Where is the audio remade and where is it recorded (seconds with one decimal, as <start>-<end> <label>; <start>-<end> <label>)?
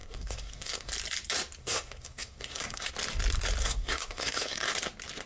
0.0-0.9 remade; 0.9-1.6 recorded; 1.6-2.9 remade; 2.9-3.6 recorded; 3.6-4.7 remade; 4.7-5.3 recorded